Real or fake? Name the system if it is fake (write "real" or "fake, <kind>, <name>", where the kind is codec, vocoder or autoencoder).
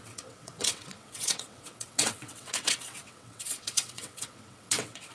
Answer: fake, vocoder, WaveNeXt